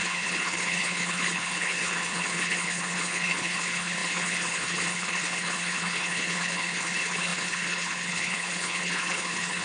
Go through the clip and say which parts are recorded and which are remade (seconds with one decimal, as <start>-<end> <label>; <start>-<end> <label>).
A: 0.0-9.6 remade